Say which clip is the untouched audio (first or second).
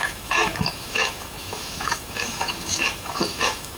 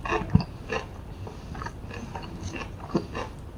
second